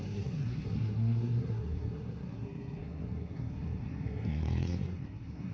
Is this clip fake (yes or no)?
yes